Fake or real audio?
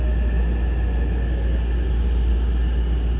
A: real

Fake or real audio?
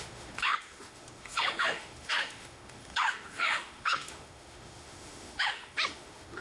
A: fake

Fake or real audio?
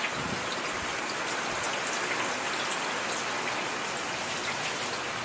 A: real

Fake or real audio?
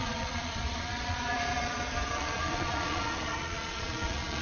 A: fake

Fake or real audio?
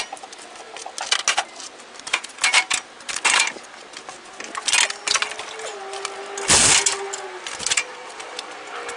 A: real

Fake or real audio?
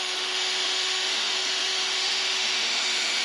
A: fake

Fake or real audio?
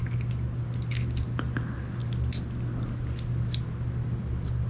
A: real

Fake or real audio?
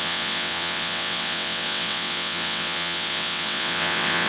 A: fake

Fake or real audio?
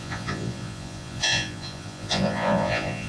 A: fake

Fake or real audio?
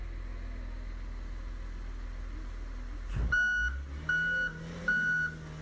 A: real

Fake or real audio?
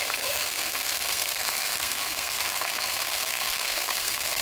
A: fake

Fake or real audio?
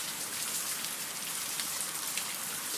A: real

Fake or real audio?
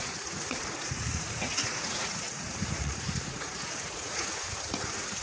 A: fake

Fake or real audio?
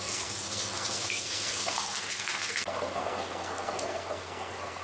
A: fake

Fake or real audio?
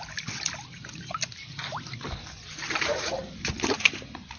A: real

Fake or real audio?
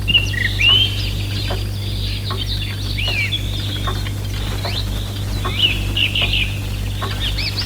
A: real